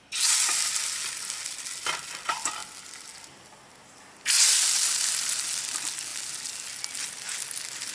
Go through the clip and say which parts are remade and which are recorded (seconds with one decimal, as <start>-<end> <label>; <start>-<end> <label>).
0.0-7.9 recorded